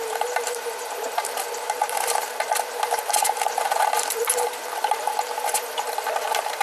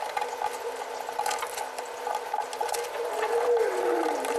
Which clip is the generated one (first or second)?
first